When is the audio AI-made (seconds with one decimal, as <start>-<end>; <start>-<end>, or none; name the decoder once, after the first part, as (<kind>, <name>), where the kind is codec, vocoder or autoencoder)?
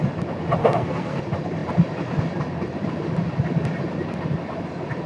0.6-1.2 (codec, SNAC)